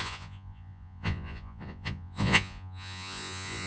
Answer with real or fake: fake